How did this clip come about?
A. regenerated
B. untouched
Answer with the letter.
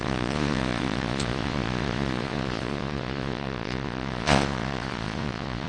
A